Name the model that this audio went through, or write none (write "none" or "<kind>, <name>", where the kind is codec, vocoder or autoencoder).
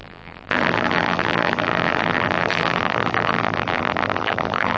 vocoder, BigVGAN v2